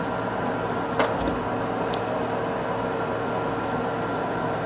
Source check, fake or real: real